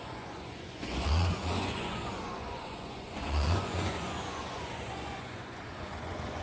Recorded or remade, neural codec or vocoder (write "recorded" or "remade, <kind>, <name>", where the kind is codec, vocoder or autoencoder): remade, vocoder, Vocos